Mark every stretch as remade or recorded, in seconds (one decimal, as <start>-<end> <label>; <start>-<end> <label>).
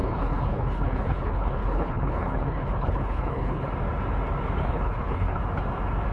0.0-3.7 remade; 3.7-4.6 recorded; 4.6-5.4 remade; 5.4-6.1 recorded